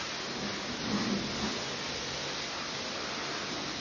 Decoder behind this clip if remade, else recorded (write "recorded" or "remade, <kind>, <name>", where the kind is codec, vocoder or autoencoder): recorded